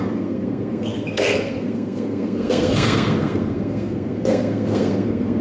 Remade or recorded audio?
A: remade